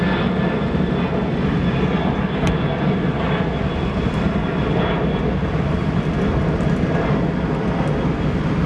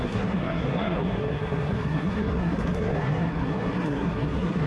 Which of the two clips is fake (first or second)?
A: second